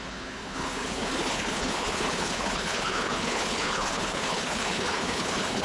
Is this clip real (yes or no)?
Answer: no